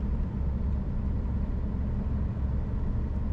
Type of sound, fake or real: real